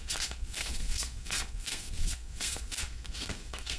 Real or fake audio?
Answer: fake